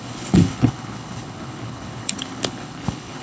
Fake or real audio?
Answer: fake